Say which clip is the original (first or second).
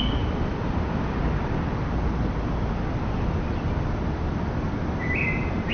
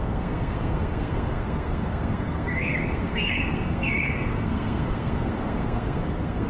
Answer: first